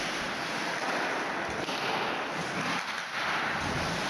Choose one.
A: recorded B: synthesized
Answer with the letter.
A